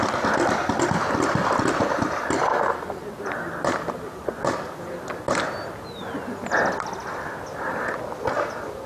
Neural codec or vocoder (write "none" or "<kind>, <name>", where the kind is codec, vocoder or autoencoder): none